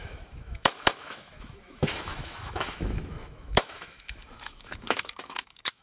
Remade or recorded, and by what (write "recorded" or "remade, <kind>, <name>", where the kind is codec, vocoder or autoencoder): remade, autoencoder, DAC-VAE